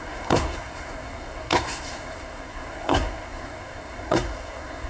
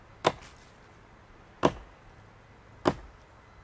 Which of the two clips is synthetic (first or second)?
first